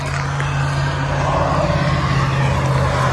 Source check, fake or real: real